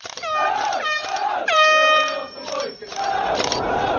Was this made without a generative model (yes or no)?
no